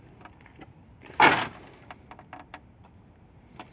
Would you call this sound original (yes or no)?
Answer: yes